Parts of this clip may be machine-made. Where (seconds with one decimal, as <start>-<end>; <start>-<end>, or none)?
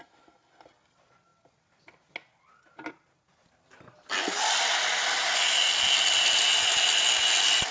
none